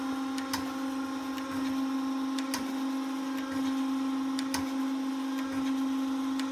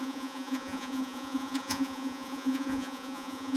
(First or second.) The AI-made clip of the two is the second